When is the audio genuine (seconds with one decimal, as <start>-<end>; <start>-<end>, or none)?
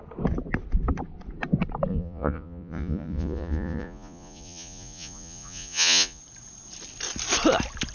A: 0.0-1.9; 6.2-7.9